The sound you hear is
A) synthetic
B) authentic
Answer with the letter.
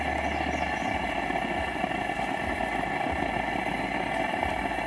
B